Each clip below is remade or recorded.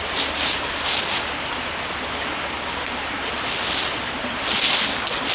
recorded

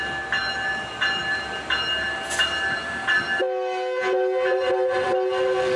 recorded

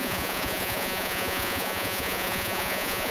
remade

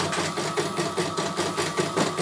recorded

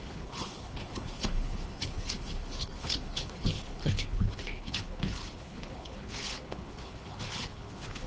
remade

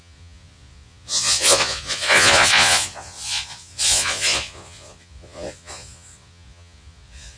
remade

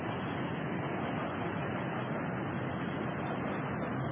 recorded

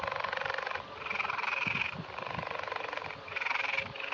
recorded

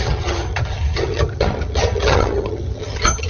remade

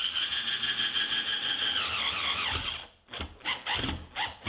recorded